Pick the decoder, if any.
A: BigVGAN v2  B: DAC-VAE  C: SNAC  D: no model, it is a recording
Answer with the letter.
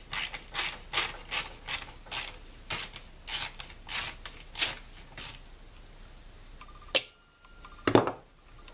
D